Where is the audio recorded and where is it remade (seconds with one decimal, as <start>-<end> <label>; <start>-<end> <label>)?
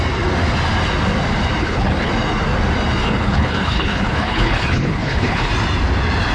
0.0-1.6 recorded; 1.6-2.1 remade; 2.1-3.0 recorded; 3.0-5.5 remade; 5.5-6.3 recorded